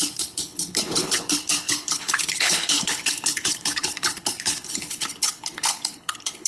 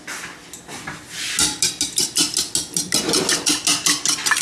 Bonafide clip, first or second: second